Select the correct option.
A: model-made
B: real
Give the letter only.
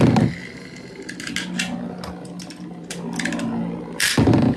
B